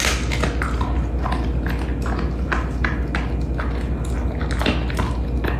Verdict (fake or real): real